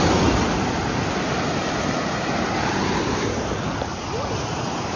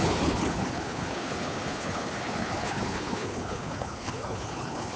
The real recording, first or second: first